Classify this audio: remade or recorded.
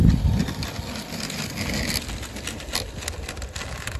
recorded